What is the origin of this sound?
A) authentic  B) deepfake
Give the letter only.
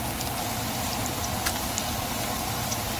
A